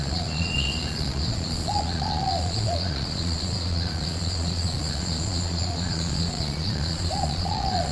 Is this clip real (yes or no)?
no